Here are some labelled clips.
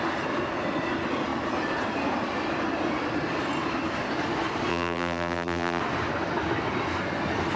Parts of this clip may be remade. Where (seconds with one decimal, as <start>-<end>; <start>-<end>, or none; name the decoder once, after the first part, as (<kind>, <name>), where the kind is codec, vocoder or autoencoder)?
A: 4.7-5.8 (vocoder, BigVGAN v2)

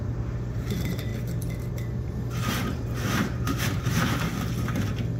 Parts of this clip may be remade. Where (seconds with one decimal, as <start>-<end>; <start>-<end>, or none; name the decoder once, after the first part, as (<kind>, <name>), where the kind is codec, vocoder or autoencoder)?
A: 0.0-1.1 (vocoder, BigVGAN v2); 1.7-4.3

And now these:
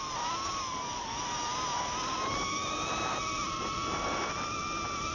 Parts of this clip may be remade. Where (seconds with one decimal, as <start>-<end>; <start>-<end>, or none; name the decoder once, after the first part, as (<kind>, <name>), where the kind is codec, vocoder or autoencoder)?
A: 1.5-4.6 (vocoder, BigVGAN v2)

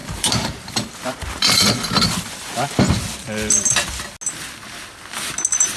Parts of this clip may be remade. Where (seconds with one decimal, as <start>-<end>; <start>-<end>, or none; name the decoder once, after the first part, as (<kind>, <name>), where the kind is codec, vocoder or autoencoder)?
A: 0.0-2.8 (vocoder, BigVGAN v2)

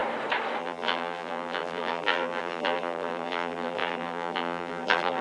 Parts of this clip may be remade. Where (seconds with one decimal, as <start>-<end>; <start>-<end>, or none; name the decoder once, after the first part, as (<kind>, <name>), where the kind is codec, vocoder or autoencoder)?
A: 0.6-5.2 (vocoder, BigVGAN v2)

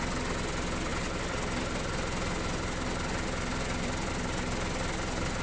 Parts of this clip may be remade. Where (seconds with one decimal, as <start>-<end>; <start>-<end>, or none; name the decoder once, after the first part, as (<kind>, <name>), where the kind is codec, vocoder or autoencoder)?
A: 0.9-4.1 (vocoder, BigVGAN v2)

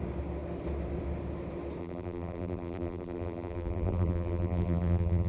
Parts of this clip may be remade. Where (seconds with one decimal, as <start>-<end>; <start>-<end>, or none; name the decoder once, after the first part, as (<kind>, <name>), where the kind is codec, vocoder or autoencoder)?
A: 1.8-5.3 (vocoder, BigVGAN v2)